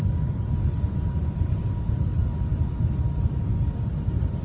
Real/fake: real